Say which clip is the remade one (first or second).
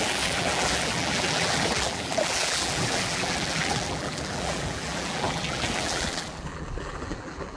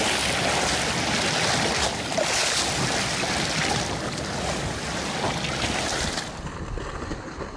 first